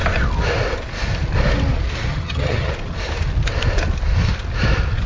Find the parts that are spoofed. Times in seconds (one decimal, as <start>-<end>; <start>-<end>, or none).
2.1-2.7